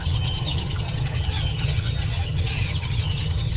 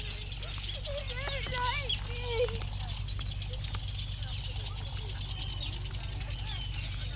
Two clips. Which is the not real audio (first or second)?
first